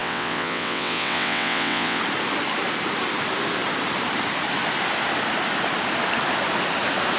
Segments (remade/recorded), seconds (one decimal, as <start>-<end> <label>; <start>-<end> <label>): 0.0-2.0 remade; 2.0-7.2 recorded